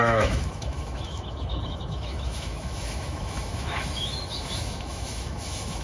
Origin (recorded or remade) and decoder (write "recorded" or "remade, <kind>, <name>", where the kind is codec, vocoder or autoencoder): remade, autoencoder, DAC-VAE